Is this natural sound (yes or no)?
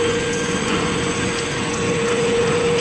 no